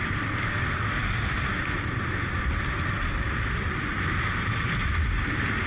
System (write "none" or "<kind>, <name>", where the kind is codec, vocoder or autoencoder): none